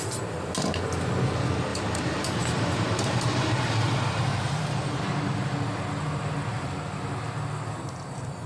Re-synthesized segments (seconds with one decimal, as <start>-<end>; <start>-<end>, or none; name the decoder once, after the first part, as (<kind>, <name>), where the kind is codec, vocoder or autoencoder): 1.7-5.0 (vocoder, BigVGAN v2)